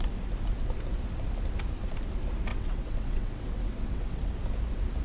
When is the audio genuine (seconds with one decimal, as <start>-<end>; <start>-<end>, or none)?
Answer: 0.0-2.5; 4.3-5.0